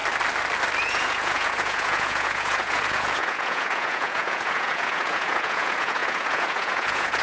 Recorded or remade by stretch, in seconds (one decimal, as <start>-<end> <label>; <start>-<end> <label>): 0.0-0.8 recorded; 0.8-7.2 remade